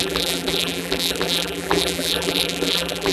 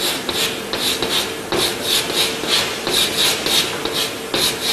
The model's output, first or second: first